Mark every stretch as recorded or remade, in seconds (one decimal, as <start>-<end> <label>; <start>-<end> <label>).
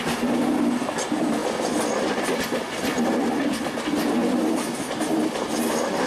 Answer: 0.0-6.1 recorded